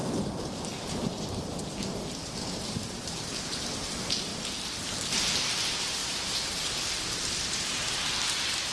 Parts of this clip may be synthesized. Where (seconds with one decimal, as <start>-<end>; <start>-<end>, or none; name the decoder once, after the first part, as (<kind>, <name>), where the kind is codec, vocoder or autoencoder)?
0.0-3.9 (vocoder, BigVGAN v2); 6.0-7.7